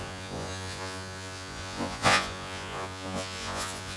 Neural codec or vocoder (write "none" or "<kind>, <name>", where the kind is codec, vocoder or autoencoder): vocoder, Vocos